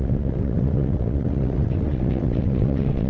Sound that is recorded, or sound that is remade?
remade